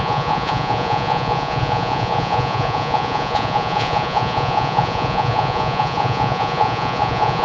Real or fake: fake